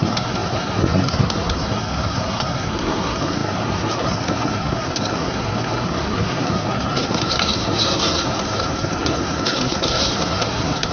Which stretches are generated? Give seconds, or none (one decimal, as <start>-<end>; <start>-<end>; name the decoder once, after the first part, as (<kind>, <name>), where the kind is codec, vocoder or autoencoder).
0.0-10.9 (codec, SNAC)